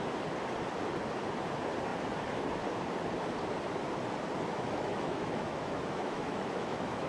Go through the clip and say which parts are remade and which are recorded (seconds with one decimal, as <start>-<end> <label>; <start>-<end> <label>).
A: 0.0-4.5 recorded; 4.5-7.1 remade